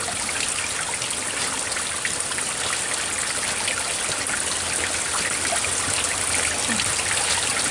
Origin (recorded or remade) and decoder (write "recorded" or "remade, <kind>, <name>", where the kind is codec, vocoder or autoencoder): recorded